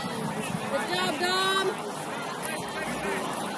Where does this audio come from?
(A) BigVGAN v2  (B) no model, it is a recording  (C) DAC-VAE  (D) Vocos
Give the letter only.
B